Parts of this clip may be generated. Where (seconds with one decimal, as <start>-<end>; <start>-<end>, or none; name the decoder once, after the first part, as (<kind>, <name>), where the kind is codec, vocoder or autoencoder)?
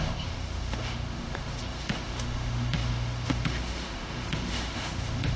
0.0-5.4 (autoencoder, DAC-VAE)